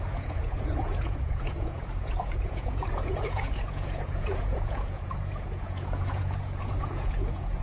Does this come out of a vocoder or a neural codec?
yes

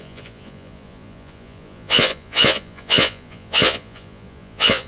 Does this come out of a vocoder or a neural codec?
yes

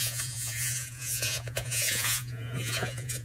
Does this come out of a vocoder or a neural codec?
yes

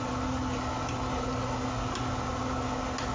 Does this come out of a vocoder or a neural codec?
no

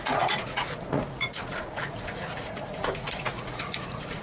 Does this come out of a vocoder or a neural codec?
yes